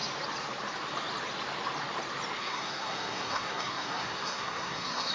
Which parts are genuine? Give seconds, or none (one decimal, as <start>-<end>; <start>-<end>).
0.0-2.4

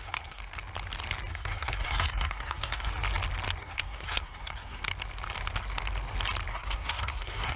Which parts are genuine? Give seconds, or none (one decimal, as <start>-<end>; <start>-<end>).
0.4-1.3; 2.9-3.6; 4.9-6.5

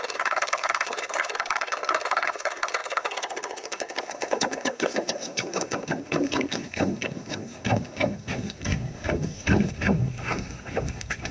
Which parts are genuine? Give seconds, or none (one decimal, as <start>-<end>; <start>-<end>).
none

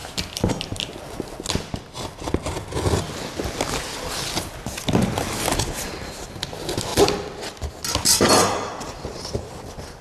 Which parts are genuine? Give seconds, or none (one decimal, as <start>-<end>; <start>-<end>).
0.0-10.0